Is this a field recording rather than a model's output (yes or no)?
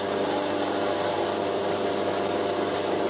yes